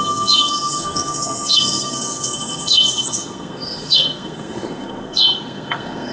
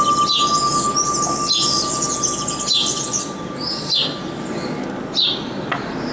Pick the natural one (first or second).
second